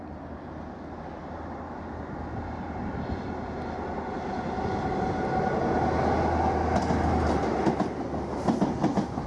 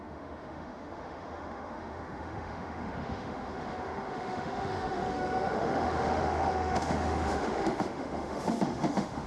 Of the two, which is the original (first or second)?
first